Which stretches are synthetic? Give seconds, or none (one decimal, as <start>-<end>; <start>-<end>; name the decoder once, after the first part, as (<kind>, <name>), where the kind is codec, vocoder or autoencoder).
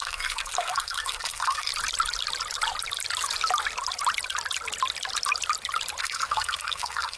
0.0-1.7 (codec, SNAC); 6.0-7.2